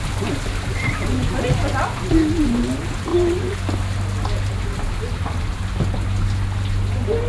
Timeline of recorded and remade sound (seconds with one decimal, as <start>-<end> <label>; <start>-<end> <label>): 0.0-7.3 recorded